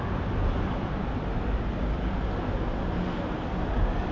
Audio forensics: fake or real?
real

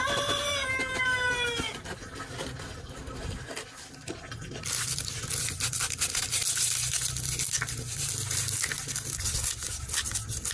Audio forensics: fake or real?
real